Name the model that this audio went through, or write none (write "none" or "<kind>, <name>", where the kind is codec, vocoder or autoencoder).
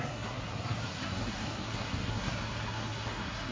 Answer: codec, SNAC